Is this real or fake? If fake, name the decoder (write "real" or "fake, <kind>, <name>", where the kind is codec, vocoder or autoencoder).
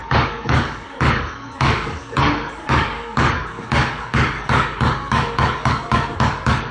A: fake, codec, DAC